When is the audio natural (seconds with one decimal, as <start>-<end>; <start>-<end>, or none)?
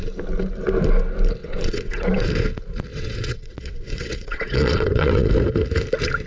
0.0-1.4; 2.3-2.9; 5.3-6.3